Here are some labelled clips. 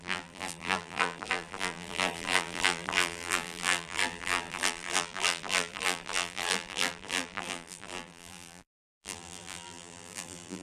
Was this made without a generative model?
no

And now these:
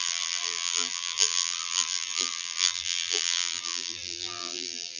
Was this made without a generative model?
no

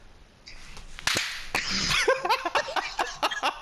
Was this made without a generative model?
yes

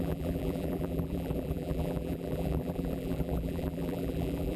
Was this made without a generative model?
no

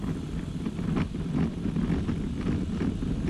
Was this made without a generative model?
yes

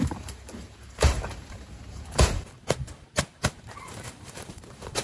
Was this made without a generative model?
no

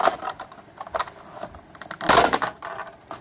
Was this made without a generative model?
yes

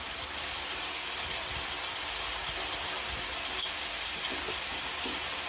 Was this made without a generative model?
no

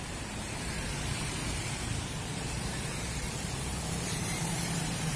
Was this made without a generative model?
no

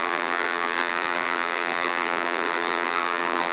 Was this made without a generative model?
no